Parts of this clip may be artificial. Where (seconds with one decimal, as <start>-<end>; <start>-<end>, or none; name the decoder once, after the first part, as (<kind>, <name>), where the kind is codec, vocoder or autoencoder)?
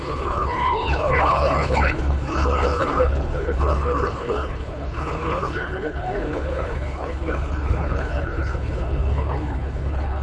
0.0-10.2 (codec, HILCodec)